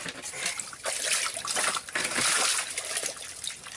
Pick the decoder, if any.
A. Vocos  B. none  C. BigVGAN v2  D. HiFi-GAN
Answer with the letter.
C